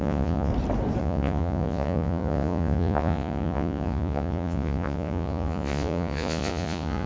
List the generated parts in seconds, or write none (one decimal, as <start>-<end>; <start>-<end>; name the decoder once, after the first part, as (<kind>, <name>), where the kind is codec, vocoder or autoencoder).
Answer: 0.0-0.5 (vocoder, Vocos); 1.0-7.1